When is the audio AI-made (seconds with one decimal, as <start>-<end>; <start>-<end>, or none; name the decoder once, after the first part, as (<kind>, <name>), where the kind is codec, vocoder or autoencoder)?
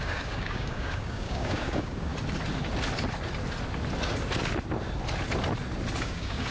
0.0-2.1 (codec, DAC); 6.0-6.5